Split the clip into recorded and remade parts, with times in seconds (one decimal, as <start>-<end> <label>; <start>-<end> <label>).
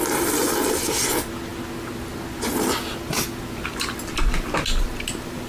0.0-5.5 recorded